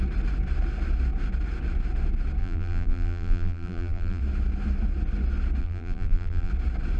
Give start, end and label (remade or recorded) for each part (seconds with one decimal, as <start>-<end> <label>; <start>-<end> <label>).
0.0-2.4 recorded; 2.4-4.2 remade; 4.2-5.6 recorded; 5.6-6.5 remade; 6.5-7.0 recorded